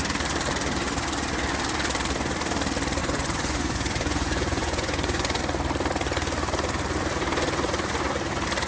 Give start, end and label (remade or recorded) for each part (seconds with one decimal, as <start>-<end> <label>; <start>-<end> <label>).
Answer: 0.0-3.0 recorded; 3.0-5.4 remade; 5.4-8.7 recorded